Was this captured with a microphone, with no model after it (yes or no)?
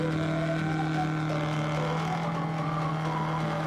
yes